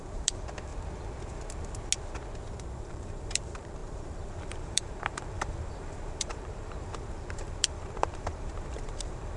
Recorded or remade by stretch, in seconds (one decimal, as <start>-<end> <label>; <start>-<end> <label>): 0.0-0.7 remade; 0.7-2.8 recorded; 2.8-9.4 remade